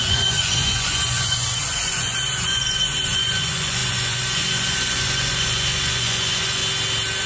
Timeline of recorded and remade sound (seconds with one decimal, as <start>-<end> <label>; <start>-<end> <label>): 0.0-6.6 remade; 6.6-7.3 recorded